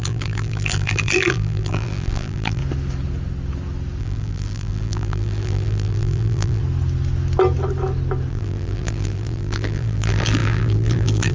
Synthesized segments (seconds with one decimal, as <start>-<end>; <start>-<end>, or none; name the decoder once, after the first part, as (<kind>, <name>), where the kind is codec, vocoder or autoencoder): 0.0-2.6 (vocoder, BigVGAN v2); 4.0-6.6; 8.3-11.3